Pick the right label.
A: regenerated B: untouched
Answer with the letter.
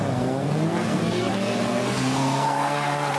A